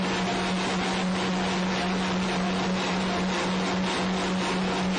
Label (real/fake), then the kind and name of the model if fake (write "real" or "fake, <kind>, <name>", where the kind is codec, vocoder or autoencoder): real